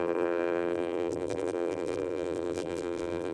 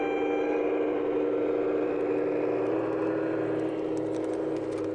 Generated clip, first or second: first